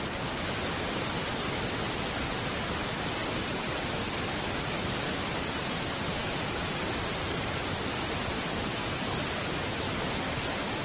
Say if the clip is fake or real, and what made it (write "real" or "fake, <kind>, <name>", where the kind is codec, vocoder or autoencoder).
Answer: real